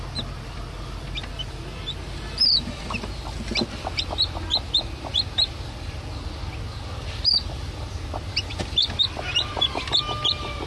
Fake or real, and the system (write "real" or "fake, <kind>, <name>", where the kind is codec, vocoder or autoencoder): real